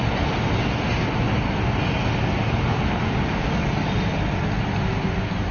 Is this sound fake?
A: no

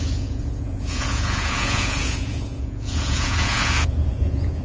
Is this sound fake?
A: yes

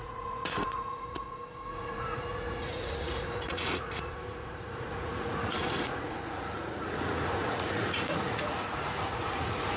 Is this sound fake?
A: yes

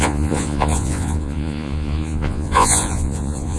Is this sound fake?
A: yes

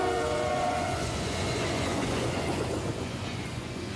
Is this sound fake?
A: yes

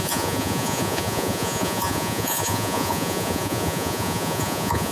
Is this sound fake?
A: yes